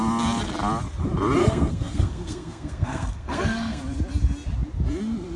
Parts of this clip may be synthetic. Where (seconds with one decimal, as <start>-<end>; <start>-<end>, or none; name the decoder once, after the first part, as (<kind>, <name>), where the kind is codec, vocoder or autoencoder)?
1.4-3.8 (codec, SNAC)